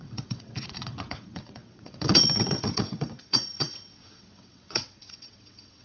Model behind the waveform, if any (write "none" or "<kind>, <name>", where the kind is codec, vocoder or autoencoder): vocoder, WaveNeXt